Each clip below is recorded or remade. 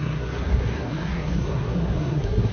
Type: remade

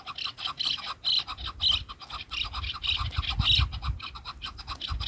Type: recorded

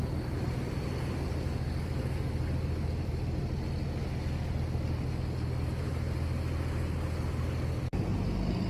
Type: recorded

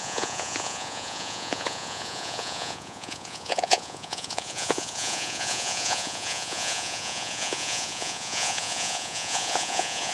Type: remade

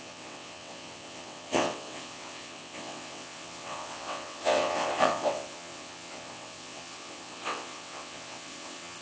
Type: remade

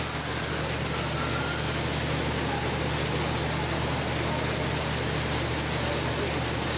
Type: recorded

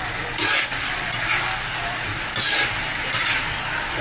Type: recorded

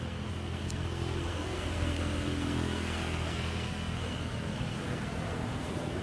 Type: remade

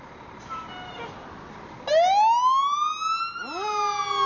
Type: recorded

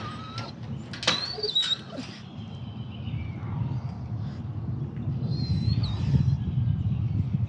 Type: recorded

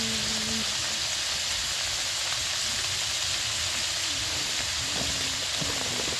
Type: recorded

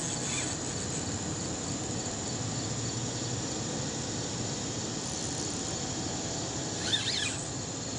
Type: recorded